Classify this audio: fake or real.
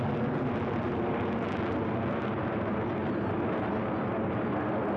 real